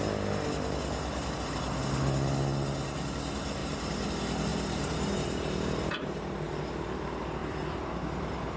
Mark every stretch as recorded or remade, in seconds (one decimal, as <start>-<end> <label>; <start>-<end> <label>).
0.0-3.6 recorded; 3.6-4.1 remade; 4.1-4.5 recorded; 4.5-6.6 remade; 6.6-8.6 recorded